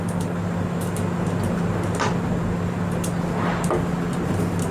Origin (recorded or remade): recorded